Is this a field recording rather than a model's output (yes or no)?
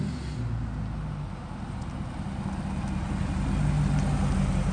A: yes